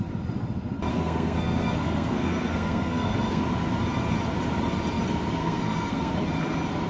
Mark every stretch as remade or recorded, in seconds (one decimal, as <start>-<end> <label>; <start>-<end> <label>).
0.0-0.9 recorded; 0.9-3.4 remade; 3.4-5.4 recorded; 5.4-6.1 remade; 6.1-6.9 recorded